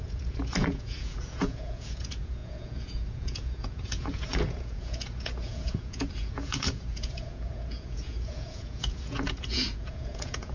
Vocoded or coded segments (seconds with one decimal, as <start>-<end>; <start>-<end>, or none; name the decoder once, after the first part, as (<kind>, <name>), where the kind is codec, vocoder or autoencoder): 0.0-10.5 (vocoder, Vocos)